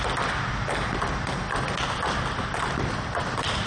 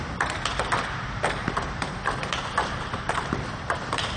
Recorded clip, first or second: first